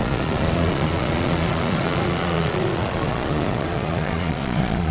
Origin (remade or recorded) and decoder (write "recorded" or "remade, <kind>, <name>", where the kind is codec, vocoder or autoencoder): remade, vocoder, Vocos